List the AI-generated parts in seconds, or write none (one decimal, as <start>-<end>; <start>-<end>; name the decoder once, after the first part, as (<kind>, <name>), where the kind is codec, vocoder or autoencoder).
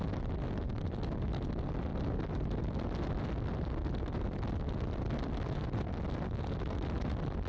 none